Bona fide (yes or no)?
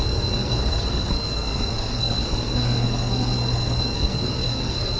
no